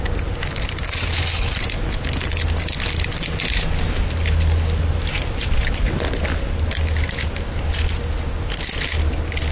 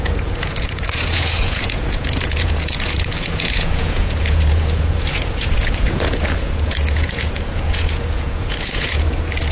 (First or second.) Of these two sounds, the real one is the first